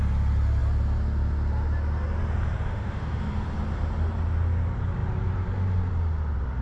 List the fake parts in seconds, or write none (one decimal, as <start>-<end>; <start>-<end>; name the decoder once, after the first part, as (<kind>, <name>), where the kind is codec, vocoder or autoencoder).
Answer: 2.7-3.2 (autoencoder, DAC-VAE)